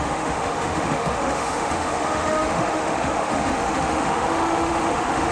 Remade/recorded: remade